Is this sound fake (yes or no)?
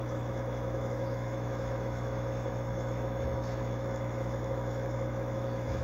yes